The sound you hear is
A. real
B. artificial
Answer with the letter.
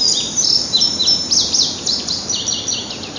A